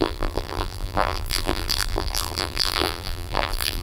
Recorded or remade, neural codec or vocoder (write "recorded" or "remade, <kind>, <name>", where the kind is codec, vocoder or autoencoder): remade, vocoder, BigVGAN v2